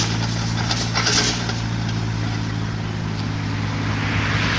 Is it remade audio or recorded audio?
recorded